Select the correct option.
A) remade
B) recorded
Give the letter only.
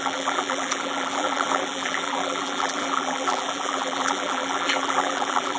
A